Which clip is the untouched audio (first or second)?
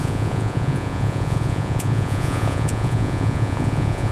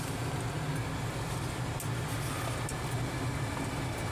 second